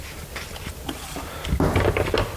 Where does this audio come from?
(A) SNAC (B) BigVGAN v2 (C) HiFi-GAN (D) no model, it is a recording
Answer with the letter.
D